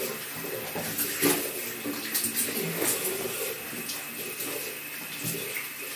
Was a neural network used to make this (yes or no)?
no